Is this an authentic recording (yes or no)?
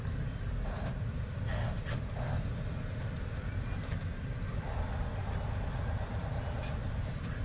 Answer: no